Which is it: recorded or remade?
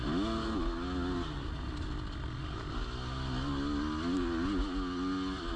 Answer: recorded